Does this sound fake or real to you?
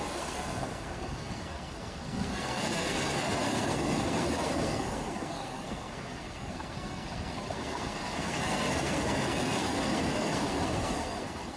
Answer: fake